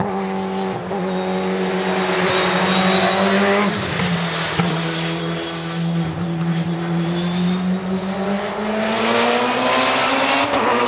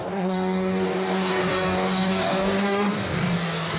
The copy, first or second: second